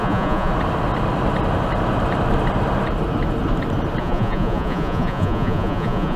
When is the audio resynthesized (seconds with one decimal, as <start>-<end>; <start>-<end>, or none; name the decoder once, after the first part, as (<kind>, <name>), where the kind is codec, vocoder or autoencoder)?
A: 0.0-0.5 (vocoder, Vocos); 4.0-6.2